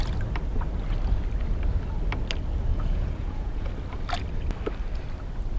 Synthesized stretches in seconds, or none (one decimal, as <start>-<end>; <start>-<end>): 2.7-3.7